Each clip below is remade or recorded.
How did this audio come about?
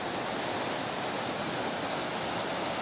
recorded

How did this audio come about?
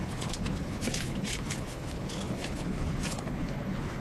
remade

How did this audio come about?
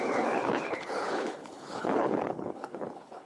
remade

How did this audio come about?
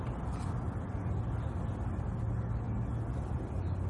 recorded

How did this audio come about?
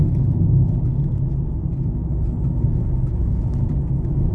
recorded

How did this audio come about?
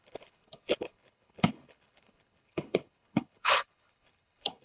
remade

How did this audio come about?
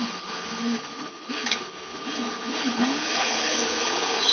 remade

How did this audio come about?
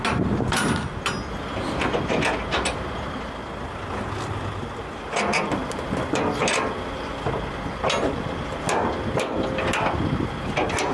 recorded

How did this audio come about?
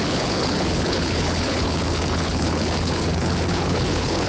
remade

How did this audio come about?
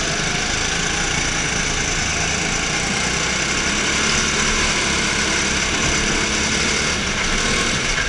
recorded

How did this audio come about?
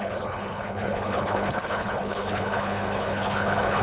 remade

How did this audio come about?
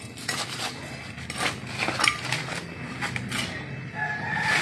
recorded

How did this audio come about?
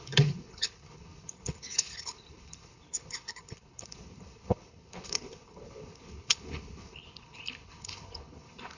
remade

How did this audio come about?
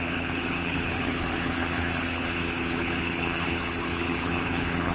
remade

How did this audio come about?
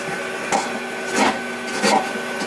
recorded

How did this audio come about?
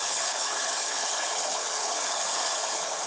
remade